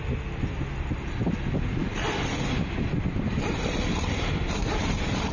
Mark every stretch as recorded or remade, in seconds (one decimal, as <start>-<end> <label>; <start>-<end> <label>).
0.0-5.3 recorded